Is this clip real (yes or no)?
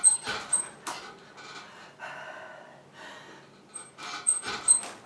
yes